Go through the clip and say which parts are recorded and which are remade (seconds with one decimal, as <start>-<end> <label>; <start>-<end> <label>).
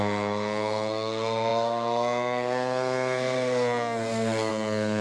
0.0-5.0 remade